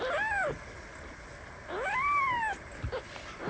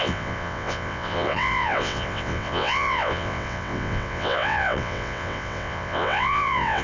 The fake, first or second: second